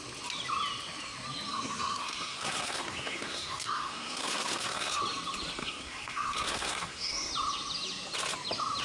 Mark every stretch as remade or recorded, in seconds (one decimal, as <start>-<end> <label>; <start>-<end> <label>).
0.0-1.5 recorded; 1.5-5.0 remade; 5.0-5.6 recorded; 5.6-7.3 remade; 7.3-8.8 recorded